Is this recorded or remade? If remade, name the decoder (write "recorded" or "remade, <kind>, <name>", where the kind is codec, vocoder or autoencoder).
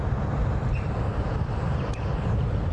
remade, vocoder, BigVGAN v2